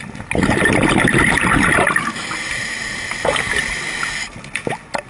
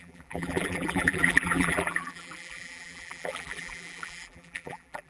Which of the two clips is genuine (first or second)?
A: first